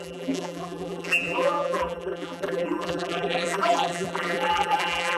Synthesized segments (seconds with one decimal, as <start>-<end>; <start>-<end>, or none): 0.0-5.2